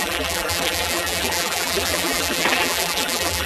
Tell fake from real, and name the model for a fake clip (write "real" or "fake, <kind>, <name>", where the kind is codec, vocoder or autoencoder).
fake, vocoder, BigVGAN v2